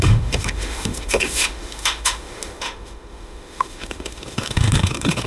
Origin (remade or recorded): remade